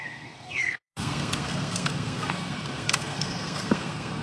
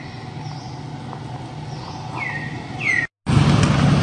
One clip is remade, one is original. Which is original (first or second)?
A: second